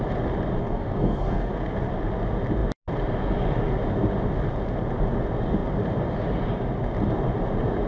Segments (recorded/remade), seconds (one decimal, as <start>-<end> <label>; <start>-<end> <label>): 0.0-0.6 recorded; 0.6-1.5 remade; 1.5-7.9 recorded